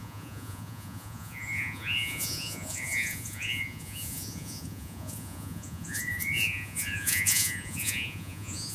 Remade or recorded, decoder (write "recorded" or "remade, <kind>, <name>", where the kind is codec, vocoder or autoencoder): remade, vocoder, Vocos